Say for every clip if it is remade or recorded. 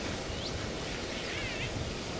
recorded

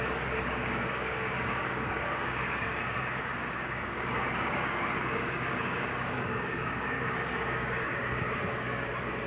remade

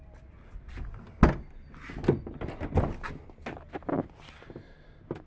recorded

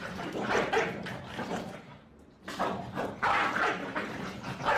remade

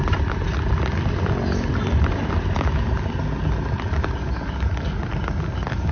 recorded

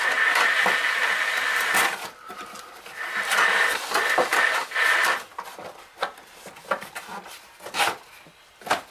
remade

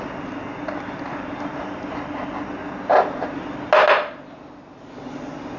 recorded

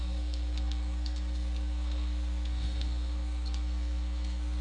remade